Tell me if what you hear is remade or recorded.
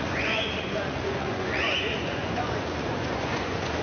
remade